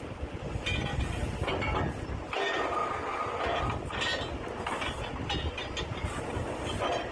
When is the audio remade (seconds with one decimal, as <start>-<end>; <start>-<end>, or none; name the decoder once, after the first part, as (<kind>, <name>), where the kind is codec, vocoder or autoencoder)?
none